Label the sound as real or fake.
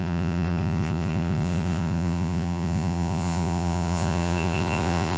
fake